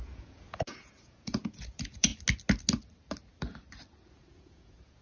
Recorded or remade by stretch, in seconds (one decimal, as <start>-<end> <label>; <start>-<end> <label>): 0.0-2.1 remade; 2.1-4.1 recorded; 4.1-5.0 remade